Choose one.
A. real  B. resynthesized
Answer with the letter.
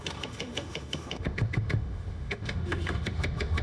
B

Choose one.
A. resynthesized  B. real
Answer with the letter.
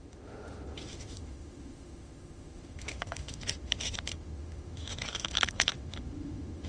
A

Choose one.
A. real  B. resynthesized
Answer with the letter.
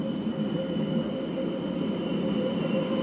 A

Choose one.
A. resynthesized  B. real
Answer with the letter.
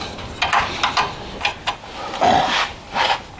B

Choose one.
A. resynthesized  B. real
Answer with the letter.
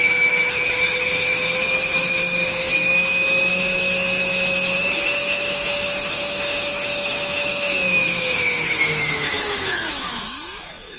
A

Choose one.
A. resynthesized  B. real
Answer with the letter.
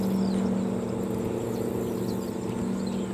B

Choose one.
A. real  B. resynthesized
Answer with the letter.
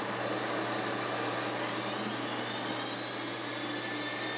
A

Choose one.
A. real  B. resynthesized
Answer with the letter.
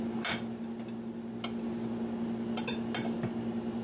A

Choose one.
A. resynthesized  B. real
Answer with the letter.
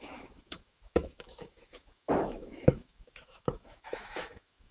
A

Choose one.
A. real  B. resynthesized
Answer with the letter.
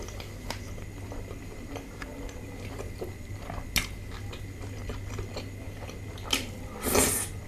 A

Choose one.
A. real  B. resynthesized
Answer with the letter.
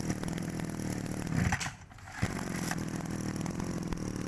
A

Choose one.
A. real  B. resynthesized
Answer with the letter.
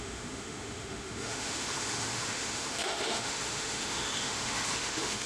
B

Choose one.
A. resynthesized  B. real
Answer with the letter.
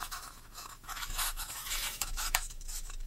A